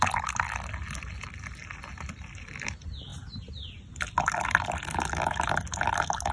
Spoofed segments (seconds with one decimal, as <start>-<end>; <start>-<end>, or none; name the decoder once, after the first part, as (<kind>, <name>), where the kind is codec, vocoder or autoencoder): none